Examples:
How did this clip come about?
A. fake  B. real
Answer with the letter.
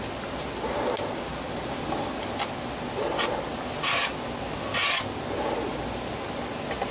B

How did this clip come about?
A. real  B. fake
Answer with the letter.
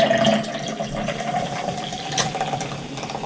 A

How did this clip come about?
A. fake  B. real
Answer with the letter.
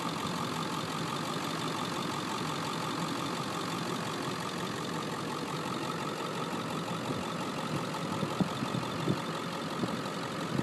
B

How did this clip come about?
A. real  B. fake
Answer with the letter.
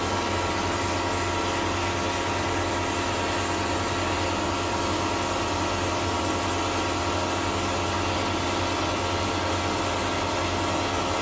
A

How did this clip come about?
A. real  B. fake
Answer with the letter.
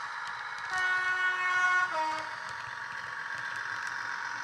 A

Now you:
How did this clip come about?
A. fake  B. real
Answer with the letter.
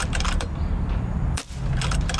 A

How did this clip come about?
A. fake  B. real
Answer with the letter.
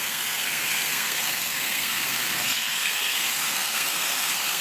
A